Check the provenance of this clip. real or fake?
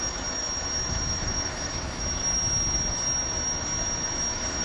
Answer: fake